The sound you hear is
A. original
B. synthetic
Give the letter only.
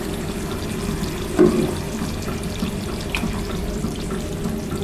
A